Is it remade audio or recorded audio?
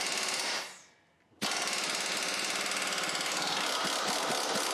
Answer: recorded